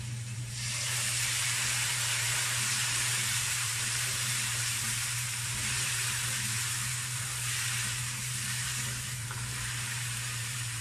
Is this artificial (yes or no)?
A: yes